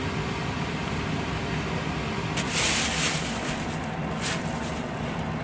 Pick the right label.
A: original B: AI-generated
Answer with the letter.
A